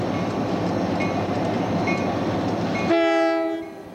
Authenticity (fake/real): real